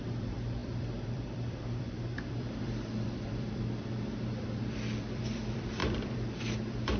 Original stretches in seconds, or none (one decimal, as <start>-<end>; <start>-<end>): none